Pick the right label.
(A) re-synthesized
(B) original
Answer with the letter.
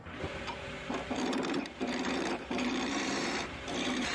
A